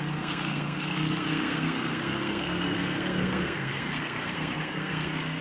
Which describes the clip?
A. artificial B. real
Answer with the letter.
A